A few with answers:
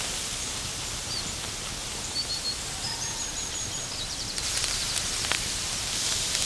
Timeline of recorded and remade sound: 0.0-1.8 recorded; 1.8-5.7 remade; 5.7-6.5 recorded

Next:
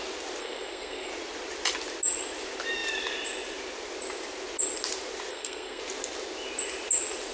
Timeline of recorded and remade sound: 0.0-0.4 recorded; 0.4-1.1 remade; 1.1-5.3 recorded; 5.3-5.8 remade; 5.8-7.3 recorded

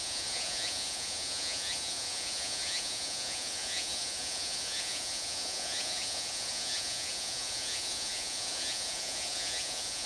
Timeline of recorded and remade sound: 0.0-10.1 remade

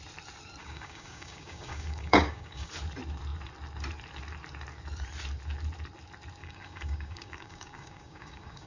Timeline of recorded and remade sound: 0.0-0.6 recorded; 0.6-2.7 remade; 2.7-6.4 recorded; 6.4-8.7 remade

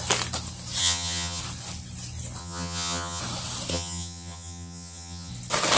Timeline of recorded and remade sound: 0.0-0.8 recorded; 0.8-1.4 remade; 1.4-2.4 recorded; 2.4-3.2 remade; 3.2-3.7 recorded; 3.7-5.3 remade; 5.3-5.8 recorded

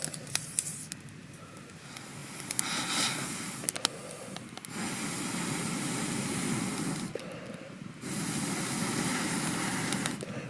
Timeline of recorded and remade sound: 0.0-1.2 recorded; 1.2-1.8 remade; 1.8-10.5 recorded

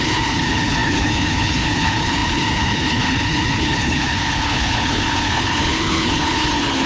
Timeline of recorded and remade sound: 0.0-6.9 remade

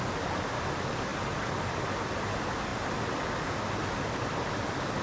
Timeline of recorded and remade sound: 0.0-5.0 recorded